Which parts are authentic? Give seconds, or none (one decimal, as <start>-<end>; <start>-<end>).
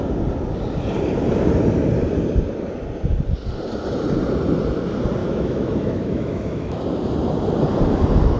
0.0-5.2; 6.8-8.4